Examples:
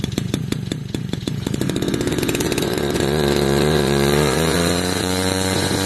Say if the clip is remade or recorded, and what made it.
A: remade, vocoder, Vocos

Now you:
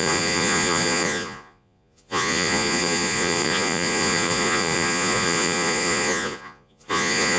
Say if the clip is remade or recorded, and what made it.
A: remade, vocoder, Vocos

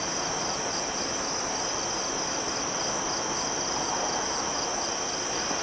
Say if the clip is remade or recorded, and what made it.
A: recorded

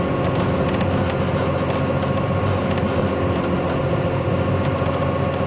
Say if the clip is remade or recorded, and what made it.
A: recorded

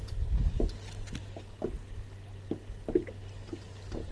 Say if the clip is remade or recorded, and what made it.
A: recorded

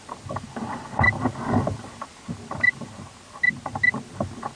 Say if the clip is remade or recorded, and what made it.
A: recorded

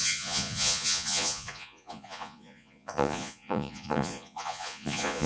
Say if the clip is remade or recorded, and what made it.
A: remade, vocoder, Vocos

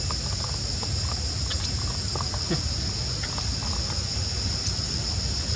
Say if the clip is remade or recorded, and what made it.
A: recorded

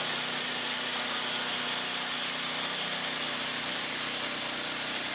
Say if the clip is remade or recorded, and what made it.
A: recorded